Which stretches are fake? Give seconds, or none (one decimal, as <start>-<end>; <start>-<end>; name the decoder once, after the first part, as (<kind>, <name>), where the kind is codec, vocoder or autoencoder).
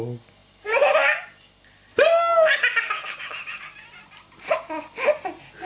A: none